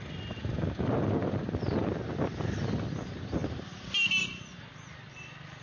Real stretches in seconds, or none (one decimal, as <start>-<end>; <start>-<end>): 0.0-5.6